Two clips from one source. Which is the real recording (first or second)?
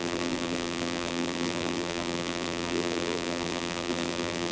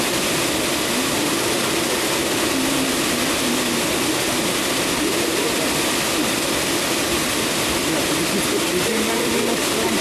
second